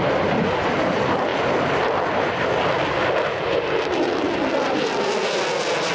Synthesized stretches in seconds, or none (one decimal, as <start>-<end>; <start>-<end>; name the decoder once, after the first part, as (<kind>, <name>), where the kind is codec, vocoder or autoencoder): none